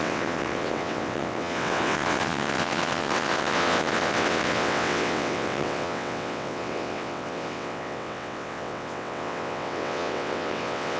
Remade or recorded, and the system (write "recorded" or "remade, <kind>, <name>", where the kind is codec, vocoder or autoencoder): remade, vocoder, WaveNeXt